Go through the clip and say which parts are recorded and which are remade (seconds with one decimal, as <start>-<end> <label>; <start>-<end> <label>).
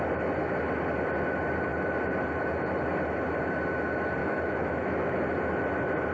0.0-4.2 recorded; 4.2-5.2 remade; 5.2-6.1 recorded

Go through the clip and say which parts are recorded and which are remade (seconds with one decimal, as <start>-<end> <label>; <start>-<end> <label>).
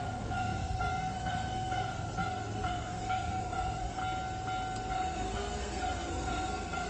0.0-4.0 remade; 4.0-4.9 recorded; 4.9-6.9 remade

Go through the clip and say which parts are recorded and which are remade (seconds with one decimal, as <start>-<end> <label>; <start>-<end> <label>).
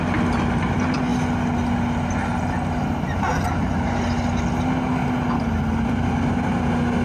0.0-7.0 recorded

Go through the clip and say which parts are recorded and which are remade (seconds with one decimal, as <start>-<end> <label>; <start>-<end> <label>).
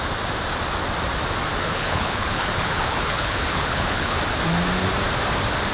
0.0-1.5 recorded; 1.5-4.2 remade; 4.2-5.7 recorded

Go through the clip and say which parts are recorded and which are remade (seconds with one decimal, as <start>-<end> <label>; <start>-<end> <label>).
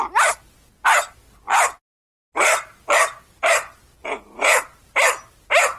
0.0-4.0 recorded; 4.0-4.6 remade; 4.6-5.8 recorded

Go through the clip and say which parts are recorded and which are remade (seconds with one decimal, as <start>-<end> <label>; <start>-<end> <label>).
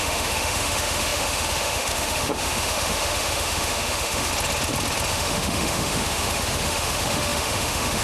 0.0-4.3 remade; 4.3-5.1 recorded; 5.1-8.0 remade